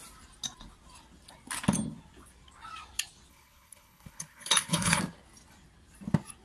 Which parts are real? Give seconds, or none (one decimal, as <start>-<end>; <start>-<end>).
0.0-3.3; 5.0-6.4